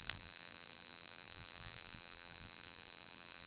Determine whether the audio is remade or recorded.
remade